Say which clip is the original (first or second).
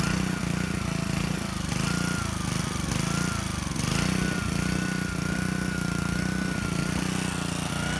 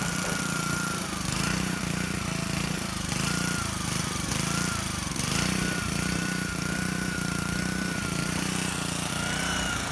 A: first